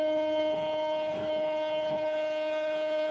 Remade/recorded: remade